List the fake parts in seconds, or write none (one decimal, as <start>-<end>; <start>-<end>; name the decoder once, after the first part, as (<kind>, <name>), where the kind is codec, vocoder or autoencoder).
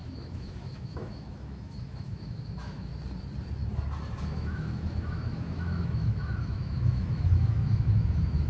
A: 0.0-2.9 (autoencoder, DAC-VAE); 4.2-8.5